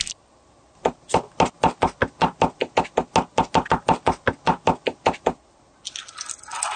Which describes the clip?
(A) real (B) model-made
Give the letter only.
A